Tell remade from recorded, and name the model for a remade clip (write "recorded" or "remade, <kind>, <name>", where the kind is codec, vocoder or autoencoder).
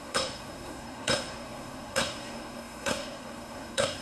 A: remade, codec, SNAC